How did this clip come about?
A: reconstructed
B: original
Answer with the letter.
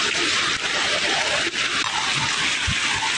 B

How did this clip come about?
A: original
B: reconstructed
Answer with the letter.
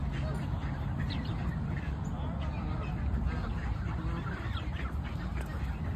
A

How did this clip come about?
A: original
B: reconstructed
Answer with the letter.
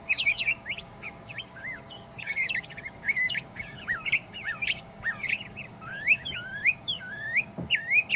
B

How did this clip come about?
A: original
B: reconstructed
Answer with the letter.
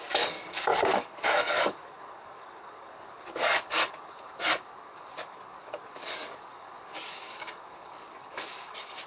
B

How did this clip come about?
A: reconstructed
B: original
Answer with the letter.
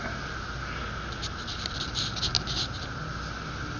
B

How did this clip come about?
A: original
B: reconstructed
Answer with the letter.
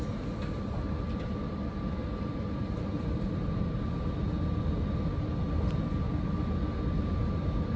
A